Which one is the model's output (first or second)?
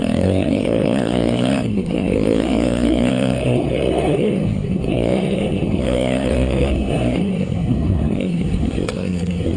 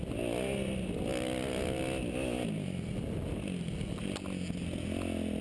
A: first